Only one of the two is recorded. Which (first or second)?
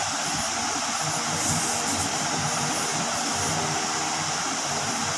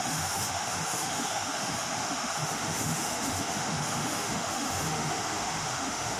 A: first